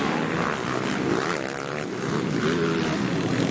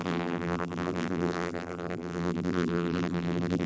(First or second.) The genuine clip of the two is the first